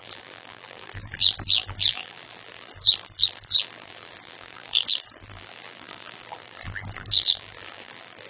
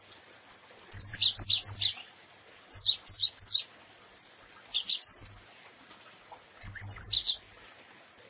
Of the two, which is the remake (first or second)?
first